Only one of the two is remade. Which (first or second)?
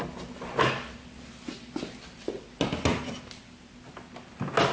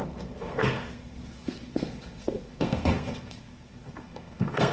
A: second